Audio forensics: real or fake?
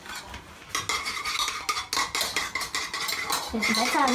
real